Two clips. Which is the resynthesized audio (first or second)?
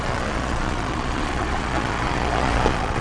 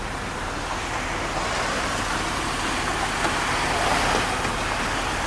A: first